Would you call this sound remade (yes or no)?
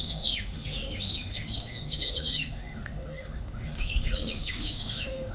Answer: yes